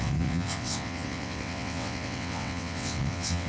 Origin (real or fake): fake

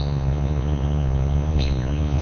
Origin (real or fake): fake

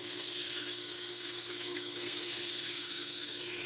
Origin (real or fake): fake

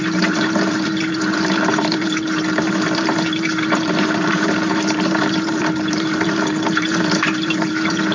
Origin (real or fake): fake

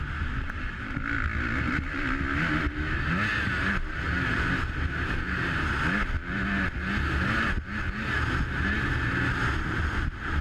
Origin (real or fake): real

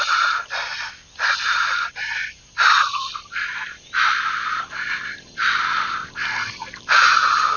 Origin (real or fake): real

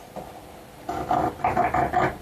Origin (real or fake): real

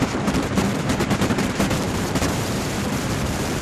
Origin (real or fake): fake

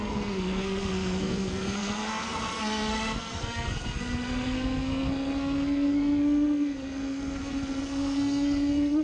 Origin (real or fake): fake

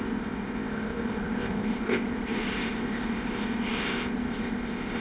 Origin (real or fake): fake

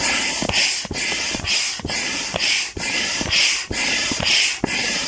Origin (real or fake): real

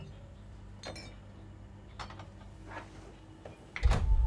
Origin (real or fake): real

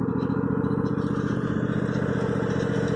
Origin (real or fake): real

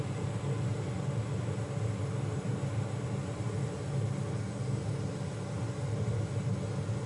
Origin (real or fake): real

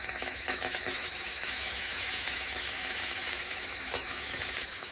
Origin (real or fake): fake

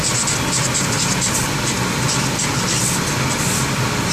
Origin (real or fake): real